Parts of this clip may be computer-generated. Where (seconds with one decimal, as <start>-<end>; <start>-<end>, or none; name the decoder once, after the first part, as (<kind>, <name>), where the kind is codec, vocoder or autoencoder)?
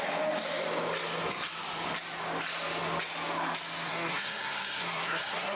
3.9-5.6 (codec, SNAC)